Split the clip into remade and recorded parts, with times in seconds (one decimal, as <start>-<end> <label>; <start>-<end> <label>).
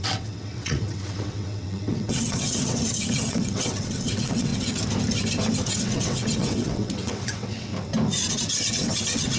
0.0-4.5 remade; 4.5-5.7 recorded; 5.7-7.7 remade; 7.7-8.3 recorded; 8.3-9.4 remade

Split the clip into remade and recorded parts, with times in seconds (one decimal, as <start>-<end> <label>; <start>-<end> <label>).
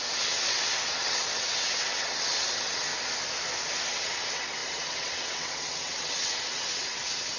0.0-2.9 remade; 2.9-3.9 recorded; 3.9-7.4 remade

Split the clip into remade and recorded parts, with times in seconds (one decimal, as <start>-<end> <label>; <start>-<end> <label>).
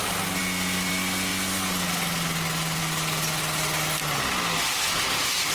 0.0-5.5 recorded